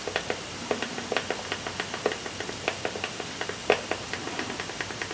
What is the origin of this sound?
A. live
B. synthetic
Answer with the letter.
A